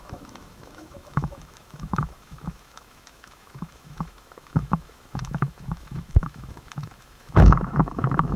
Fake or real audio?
fake